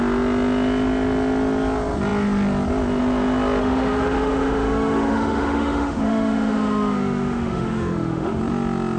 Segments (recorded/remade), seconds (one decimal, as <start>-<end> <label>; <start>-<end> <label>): 0.0-3.6 recorded; 3.6-8.4 remade; 8.4-9.0 recorded